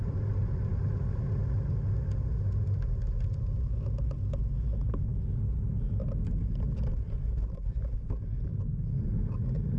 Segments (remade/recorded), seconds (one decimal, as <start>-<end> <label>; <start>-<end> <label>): 0.0-9.8 recorded